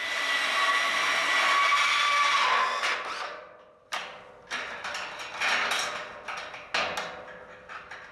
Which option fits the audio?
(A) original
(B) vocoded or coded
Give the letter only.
A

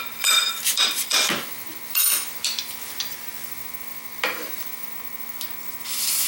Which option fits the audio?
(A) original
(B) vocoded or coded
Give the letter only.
B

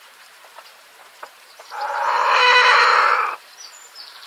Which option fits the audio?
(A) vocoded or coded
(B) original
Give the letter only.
A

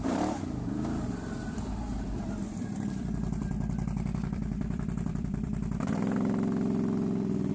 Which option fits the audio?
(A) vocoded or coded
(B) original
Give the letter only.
A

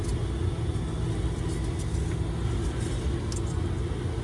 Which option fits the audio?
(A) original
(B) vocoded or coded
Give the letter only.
A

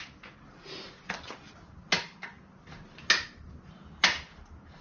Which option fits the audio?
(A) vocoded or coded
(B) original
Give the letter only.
B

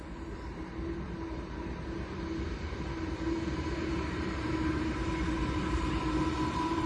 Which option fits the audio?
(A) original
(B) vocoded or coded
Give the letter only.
B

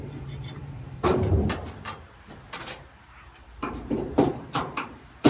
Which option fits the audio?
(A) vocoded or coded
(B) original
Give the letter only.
A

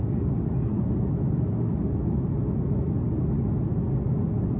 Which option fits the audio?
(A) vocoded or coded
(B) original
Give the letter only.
B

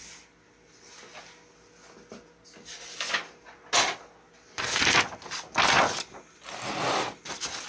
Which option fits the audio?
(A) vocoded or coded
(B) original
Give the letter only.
B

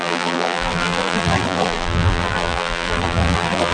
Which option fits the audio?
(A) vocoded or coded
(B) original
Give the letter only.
A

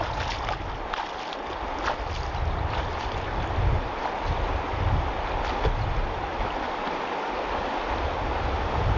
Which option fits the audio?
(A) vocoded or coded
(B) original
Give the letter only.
B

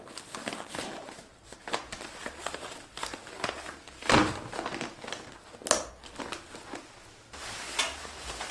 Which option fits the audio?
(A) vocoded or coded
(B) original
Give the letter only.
B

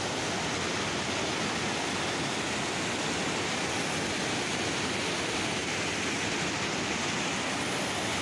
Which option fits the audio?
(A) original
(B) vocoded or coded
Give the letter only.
A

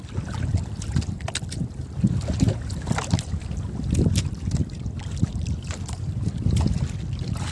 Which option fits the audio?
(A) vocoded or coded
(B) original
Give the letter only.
B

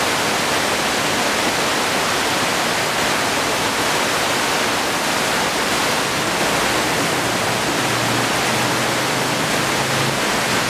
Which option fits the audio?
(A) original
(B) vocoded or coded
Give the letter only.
A